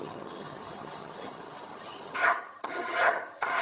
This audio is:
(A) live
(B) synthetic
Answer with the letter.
B